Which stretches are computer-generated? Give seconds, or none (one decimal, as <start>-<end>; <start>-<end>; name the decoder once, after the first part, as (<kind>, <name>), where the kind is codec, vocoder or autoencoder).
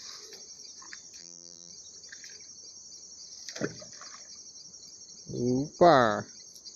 1.2-1.7 (vocoder, BigVGAN v2)